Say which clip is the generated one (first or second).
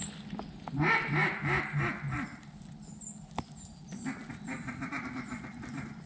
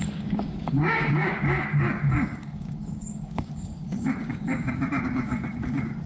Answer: second